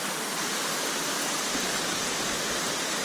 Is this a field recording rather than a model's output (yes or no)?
no